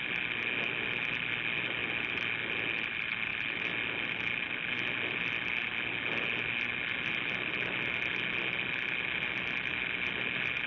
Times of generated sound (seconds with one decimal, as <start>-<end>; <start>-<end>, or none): none